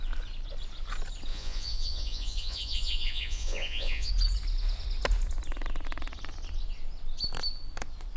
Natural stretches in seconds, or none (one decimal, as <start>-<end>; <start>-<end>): 0.0-1.3; 4.1-8.2